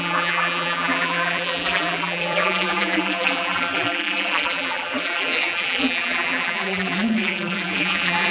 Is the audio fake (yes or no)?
yes